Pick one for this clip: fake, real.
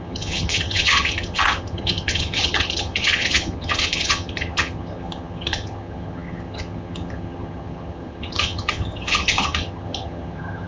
fake